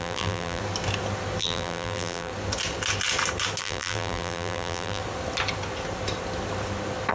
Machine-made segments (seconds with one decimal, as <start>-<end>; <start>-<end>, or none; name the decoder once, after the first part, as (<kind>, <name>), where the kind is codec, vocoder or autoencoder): 0.0-0.6 (vocoder, BigVGAN v2); 1.4-2.3; 3.6-5.0